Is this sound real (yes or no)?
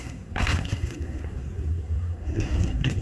no